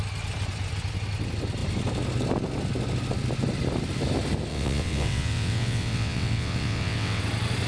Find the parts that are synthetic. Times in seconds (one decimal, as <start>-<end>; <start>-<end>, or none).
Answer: 4.5-7.2